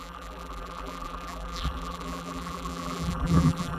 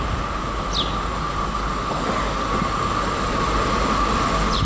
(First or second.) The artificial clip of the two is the first